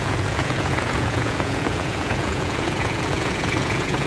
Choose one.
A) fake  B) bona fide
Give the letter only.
A